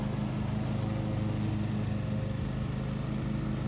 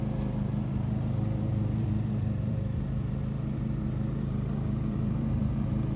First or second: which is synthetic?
second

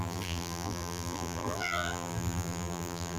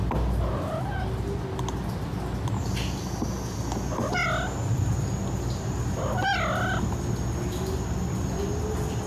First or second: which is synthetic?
first